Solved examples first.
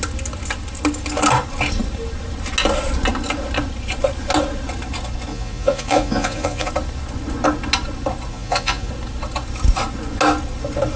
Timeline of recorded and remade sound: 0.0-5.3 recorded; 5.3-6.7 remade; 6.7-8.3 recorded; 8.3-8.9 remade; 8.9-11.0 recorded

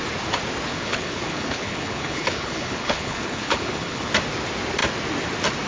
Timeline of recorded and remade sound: 0.0-0.7 recorded; 0.7-4.1 remade; 4.1-5.7 recorded

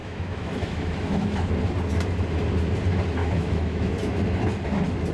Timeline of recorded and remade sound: 0.0-1.5 remade; 1.5-3.2 recorded; 3.2-4.2 remade; 4.2-5.1 recorded

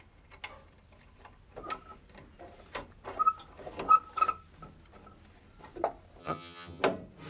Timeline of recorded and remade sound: 0.0-6.2 recorded; 6.2-6.8 remade; 6.8-7.3 recorded

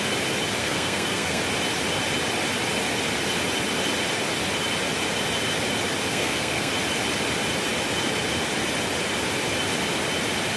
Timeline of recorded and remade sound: 0.0-0.6 recorded; 0.6-1.4 remade; 1.4-6.1 recorded; 6.1-6.7 remade; 6.7-10.6 recorded

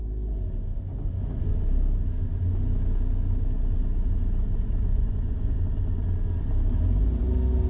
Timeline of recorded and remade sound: 0.0-4.9 recorded; 4.9-5.6 remade; 5.6-7.7 recorded